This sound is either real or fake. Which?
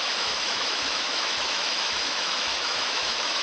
fake